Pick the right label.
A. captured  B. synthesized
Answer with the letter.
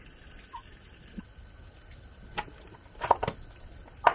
A